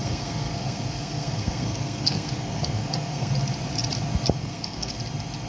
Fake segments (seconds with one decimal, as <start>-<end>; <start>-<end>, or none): 0.0-3.3; 4.4-4.9